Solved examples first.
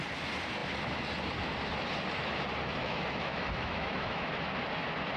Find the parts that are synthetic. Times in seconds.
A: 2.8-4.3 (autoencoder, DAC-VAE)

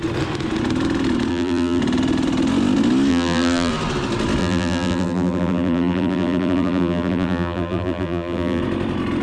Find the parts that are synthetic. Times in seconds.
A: 1.3-1.8 (vocoder, BigVGAN v2); 3.1-3.7; 4.4-8.6

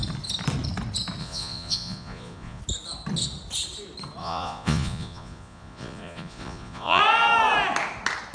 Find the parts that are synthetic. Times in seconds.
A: 1.2-2.6 (vocoder, Vocos); 4.2-7.0

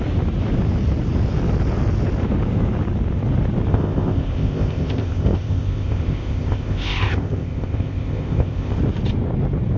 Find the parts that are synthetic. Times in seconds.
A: 3.7-8.8 (codec, ZipCodec)

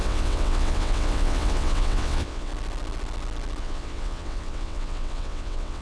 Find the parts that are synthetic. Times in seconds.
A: 0.0-2.5 (vocoder, WaveNeXt); 3.6-5.8

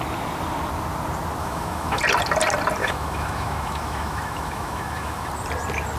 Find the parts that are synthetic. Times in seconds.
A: 1.4-2.0 (autoencoder, DAC-VAE); 2.8-5.3